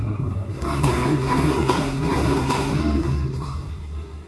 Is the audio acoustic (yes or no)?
no